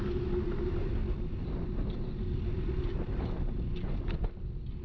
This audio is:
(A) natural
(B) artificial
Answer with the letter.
A